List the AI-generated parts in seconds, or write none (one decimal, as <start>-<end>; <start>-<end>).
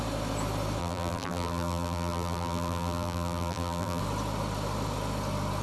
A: 0.8-4.0